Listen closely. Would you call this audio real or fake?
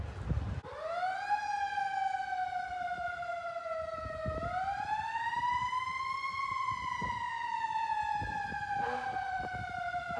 real